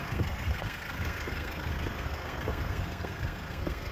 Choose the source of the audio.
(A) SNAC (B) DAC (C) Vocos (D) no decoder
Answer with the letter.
A